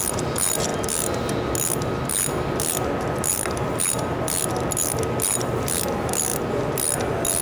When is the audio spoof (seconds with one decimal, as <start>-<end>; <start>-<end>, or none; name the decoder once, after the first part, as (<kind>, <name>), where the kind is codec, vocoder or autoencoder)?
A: none